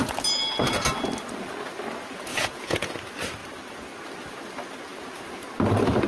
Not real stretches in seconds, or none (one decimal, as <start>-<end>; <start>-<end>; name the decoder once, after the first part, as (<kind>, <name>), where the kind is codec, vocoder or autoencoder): 2.3-2.9 (vocoder, Vocos)

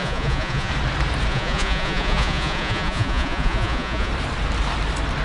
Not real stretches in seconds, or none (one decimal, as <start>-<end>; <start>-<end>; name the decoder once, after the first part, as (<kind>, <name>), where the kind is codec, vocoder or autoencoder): 0.0-0.7 (vocoder, Vocos); 1.3-4.1